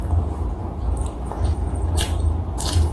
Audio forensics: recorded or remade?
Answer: remade